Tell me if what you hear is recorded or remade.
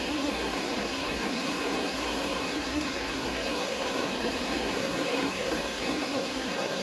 remade